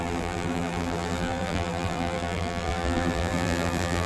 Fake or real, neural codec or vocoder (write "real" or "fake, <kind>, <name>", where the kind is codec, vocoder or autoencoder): fake, vocoder, BigVGAN v2